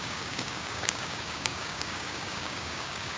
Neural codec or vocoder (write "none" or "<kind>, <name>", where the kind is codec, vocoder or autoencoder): codec, DAC